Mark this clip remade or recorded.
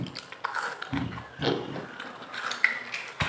recorded